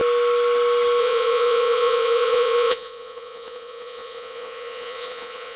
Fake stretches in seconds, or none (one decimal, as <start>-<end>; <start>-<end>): 1.0-5.6